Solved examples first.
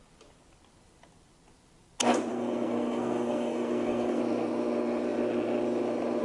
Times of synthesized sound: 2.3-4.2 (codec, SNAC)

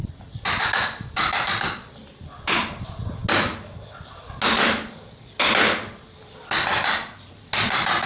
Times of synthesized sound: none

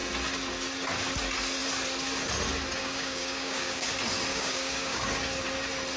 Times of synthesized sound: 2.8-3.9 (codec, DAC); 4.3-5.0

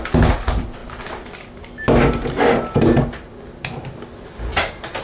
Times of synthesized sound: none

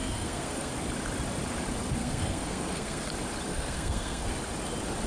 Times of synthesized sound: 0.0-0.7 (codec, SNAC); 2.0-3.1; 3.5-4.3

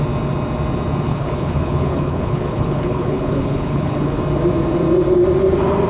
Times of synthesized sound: 1.1-4.2 (codec, HILCodec)